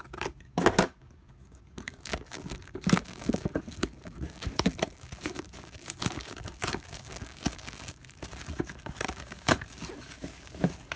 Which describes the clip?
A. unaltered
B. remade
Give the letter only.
B